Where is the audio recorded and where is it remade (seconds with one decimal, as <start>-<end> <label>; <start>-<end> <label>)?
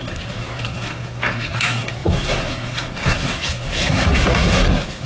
0.0-5.1 remade